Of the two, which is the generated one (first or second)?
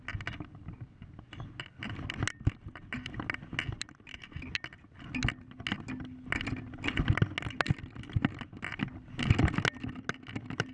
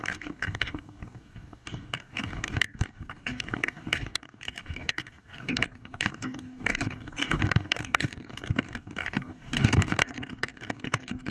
second